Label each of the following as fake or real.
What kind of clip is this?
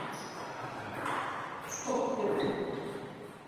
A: real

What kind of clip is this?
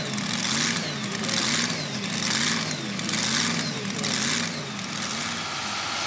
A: real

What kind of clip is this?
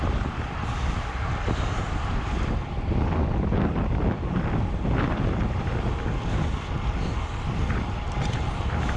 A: real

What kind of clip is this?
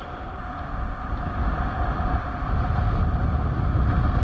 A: real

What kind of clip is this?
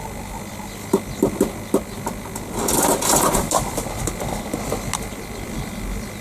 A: real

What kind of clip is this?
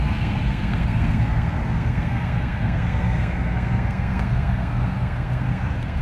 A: fake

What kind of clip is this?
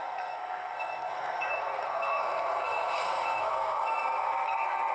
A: fake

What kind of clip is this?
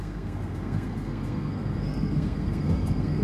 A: fake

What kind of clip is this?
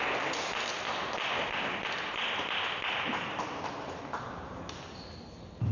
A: real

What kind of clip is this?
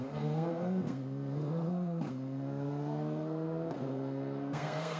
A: fake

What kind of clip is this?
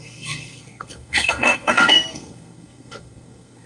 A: fake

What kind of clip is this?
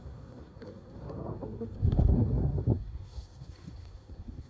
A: fake